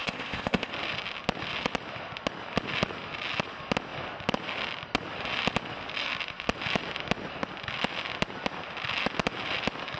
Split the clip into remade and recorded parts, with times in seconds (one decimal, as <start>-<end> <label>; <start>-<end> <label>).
0.0-0.7 remade; 0.7-10.0 recorded